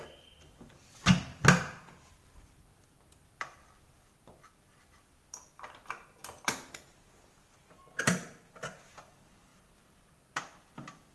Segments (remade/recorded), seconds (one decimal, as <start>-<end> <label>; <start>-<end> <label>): 0.0-1.3 remade; 1.3-2.1 recorded; 2.1-6.2 remade; 6.2-7.9 recorded; 7.9-11.1 remade